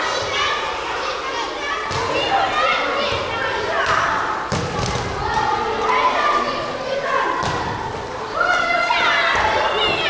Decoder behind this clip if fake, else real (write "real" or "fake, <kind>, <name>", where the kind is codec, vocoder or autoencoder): real